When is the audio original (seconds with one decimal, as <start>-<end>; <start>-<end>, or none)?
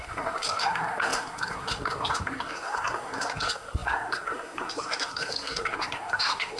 none